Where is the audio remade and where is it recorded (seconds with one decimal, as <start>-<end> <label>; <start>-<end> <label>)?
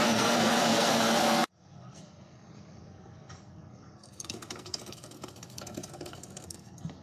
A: 0.0-7.0 remade